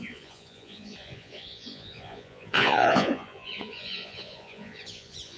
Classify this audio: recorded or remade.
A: remade